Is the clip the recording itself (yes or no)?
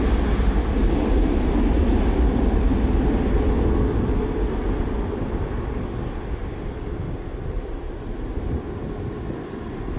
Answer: yes